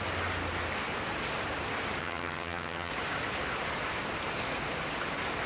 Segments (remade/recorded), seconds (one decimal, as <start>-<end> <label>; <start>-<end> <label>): 0.0-2.0 recorded; 2.0-2.9 remade; 2.9-5.5 recorded